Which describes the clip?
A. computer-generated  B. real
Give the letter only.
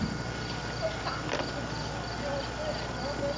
B